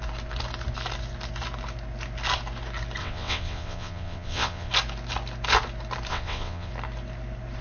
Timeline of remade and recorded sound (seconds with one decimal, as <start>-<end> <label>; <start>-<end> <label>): 0.0-3.0 recorded; 3.0-4.7 remade; 4.7-6.1 recorded; 6.1-6.7 remade; 6.7-7.6 recorded